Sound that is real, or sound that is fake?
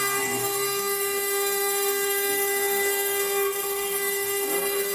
fake